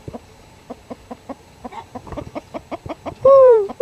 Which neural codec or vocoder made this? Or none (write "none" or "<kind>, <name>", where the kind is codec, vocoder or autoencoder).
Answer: vocoder, BigVGAN v2